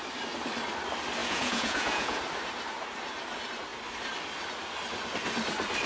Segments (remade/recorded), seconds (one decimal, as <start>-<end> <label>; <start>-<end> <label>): 0.0-1.2 recorded; 1.2-2.2 remade; 2.2-5.9 recorded